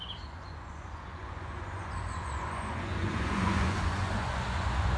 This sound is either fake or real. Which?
fake